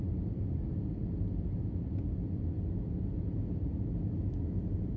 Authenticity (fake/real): real